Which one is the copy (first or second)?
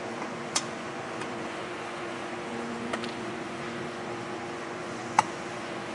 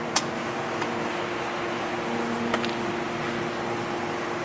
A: first